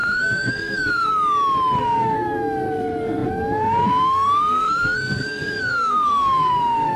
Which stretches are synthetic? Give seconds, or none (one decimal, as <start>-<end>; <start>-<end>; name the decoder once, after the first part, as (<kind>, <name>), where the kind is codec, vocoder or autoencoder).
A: 0.0-1.1 (codec, SNAC); 1.8-7.0